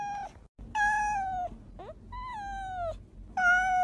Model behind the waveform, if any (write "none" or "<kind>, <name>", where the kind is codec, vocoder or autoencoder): none